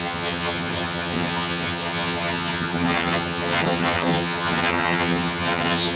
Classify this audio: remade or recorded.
remade